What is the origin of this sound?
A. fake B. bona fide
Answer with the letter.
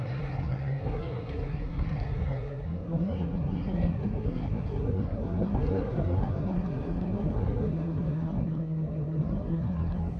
A